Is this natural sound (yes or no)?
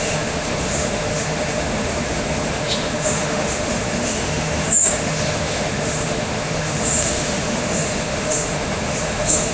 no